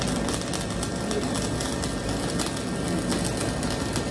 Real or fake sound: real